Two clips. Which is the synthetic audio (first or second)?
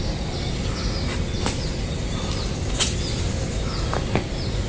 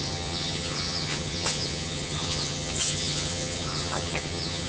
second